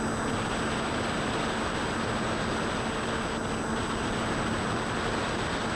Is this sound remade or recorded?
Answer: recorded